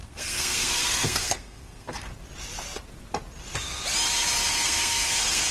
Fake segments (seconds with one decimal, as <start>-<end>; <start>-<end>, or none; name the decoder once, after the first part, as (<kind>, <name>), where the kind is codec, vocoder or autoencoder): 0.0-2.1 (codec, SNAC); 4.5-5.5